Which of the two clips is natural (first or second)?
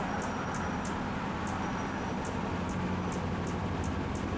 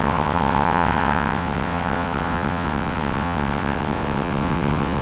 first